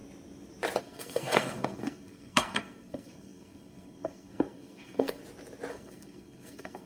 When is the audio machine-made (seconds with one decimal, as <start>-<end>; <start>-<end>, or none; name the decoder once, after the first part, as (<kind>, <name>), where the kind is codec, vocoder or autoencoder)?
0.8-5.2 (codec, SNAC); 5.7-6.9